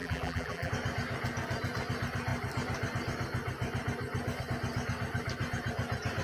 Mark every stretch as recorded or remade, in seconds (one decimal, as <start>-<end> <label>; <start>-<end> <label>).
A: 0.0-0.7 remade; 0.7-6.2 recorded